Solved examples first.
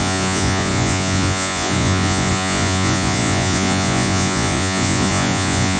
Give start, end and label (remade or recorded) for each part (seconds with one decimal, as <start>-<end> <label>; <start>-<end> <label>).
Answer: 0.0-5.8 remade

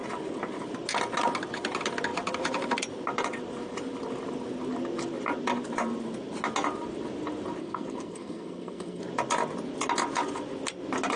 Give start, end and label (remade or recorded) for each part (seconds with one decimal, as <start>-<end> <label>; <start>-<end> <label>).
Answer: 0.0-7.6 recorded; 7.6-9.0 remade; 9.0-11.2 recorded

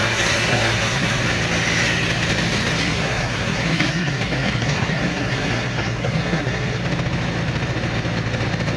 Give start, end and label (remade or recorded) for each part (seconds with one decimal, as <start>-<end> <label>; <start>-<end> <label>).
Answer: 0.0-1.2 remade; 1.2-2.8 recorded; 2.8-6.8 remade; 6.8-8.8 recorded

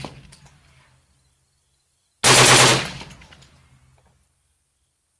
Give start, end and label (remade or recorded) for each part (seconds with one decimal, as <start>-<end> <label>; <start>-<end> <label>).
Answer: 0.0-5.2 recorded

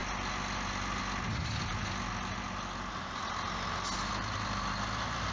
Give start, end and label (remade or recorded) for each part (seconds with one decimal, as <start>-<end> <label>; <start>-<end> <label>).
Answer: 0.0-5.3 recorded

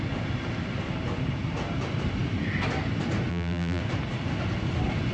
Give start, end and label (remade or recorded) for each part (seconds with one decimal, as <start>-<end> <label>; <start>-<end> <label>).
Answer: 0.0-3.3 recorded; 3.3-3.8 remade; 3.8-5.1 recorded

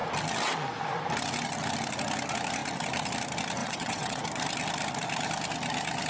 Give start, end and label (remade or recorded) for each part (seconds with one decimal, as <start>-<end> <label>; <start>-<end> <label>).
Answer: 0.0-3.6 recorded; 3.6-4.2 remade; 4.2-6.1 recorded

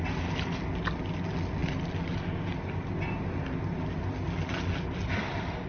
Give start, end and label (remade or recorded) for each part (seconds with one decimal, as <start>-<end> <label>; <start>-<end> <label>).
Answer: 0.0-5.7 recorded